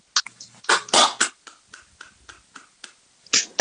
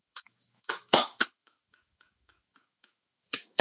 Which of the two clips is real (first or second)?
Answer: first